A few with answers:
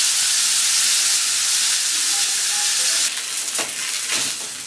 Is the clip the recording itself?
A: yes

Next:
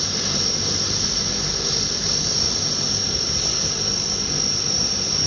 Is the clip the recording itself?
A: yes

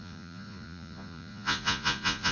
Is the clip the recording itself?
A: no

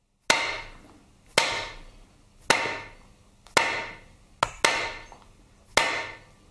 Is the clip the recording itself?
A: yes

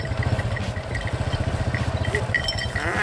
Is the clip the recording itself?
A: yes